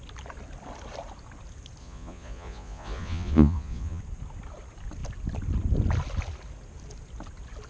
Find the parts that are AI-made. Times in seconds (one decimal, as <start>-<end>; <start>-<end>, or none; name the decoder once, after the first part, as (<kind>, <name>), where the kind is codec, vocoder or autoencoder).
1.8-4.0 (vocoder, Vocos)